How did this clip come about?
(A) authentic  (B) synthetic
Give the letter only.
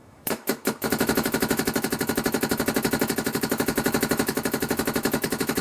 B